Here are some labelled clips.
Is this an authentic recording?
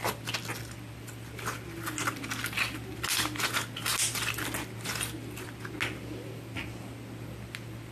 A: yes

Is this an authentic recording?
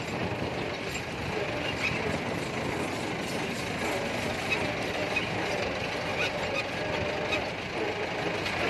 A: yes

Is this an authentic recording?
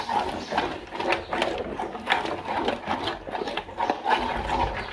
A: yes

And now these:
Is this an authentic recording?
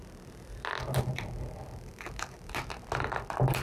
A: yes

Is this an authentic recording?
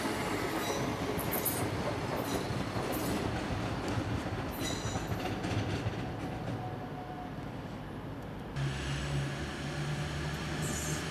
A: yes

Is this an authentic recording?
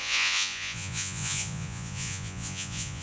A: no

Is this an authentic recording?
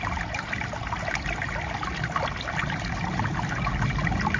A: yes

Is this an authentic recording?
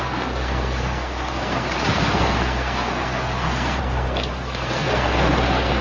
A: no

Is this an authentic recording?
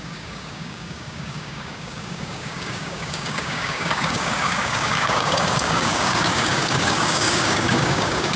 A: no